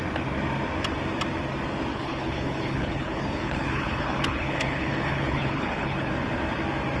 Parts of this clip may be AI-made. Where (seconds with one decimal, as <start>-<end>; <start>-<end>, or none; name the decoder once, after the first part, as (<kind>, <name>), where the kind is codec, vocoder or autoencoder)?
1.9-6.1 (codec, HILCodec)